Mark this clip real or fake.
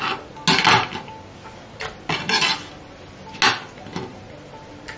real